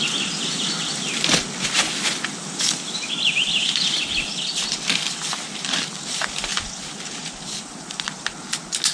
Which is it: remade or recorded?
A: recorded